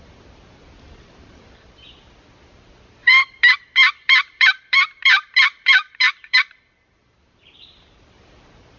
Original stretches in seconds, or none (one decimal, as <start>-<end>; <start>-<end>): none